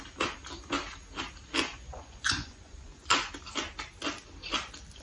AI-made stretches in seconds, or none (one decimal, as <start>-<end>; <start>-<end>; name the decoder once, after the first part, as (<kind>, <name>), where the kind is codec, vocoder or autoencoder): 1.7-3.3 (vocoder, Vocos)